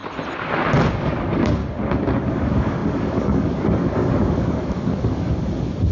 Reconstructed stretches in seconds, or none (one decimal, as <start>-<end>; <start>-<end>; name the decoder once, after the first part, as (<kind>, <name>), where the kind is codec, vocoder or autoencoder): 0.9-1.6 (codec, DAC); 2.3-5.9